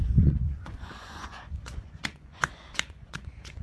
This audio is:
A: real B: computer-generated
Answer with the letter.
B